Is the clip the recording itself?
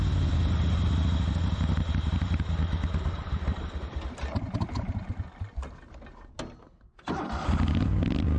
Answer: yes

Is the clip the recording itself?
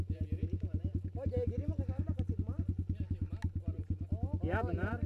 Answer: yes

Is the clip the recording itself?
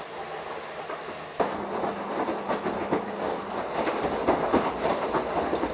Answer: yes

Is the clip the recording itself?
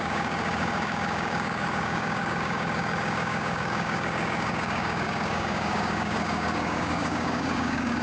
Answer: no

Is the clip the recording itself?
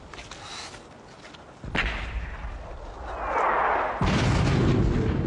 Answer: yes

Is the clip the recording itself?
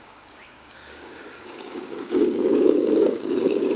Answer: no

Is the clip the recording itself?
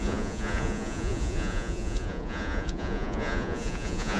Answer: no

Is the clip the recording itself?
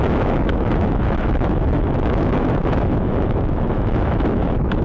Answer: no